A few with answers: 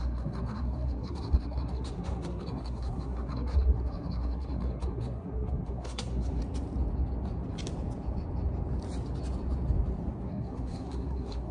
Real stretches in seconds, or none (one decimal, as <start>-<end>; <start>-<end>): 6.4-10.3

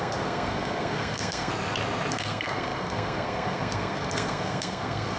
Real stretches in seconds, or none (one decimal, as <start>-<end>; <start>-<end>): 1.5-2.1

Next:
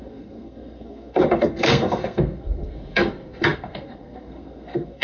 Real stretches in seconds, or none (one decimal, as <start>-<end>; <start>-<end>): none

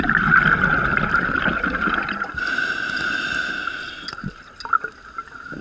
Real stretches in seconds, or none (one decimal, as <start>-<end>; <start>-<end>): 0.0-5.6

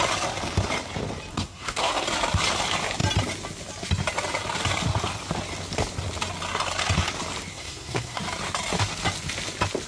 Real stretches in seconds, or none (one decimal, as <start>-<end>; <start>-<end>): 0.0-1.3; 1.9-7.5; 8.2-9.9